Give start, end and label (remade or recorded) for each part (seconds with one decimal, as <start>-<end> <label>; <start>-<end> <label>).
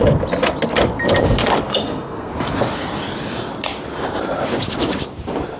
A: 0.0-1.7 recorded; 1.7-2.3 remade; 2.3-5.6 recorded